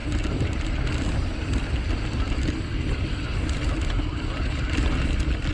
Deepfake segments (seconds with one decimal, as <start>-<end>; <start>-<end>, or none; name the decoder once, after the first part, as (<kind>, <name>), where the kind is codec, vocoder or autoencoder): none